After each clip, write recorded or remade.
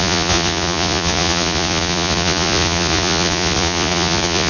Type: remade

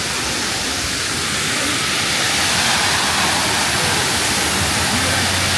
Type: recorded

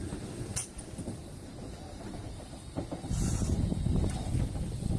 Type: recorded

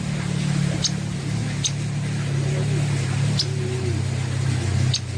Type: recorded